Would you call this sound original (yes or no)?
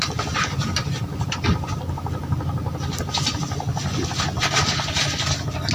yes